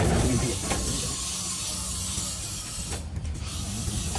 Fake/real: real